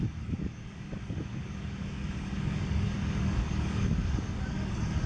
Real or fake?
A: fake